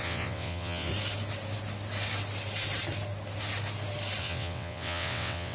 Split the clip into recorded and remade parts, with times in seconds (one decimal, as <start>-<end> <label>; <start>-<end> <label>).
0.0-0.9 remade; 0.9-4.2 recorded; 4.2-5.5 remade